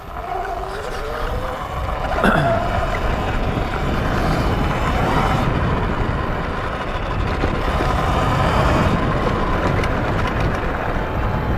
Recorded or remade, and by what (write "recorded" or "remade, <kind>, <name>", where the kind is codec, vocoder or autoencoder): recorded